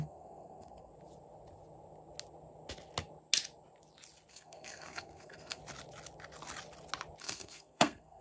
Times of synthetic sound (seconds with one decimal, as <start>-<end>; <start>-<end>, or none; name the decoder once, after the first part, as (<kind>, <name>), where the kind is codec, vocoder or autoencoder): 0.0-0.9 (codec, SNAC); 4.3-5.6; 7.2-8.2